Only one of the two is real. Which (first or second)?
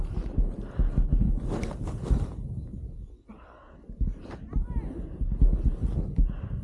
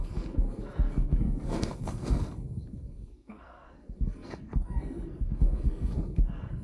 first